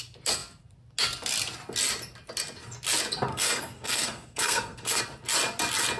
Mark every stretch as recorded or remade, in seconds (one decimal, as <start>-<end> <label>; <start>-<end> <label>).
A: 0.0-3.3 recorded; 3.3-5.0 remade; 5.0-6.0 recorded